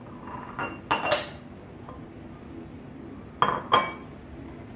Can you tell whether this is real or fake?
real